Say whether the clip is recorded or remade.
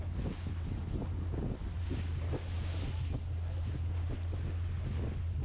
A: recorded